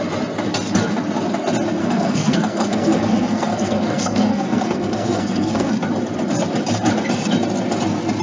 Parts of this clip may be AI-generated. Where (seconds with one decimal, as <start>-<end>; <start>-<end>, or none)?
1.8-5.7